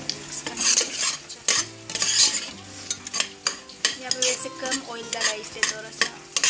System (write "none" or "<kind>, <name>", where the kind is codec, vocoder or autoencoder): none